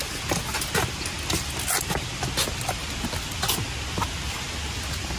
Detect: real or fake real